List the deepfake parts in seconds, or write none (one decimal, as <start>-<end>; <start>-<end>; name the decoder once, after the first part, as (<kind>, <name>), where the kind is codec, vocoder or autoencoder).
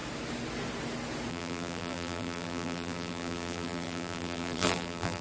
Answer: 1.3-5.2 (vocoder, BigVGAN v2)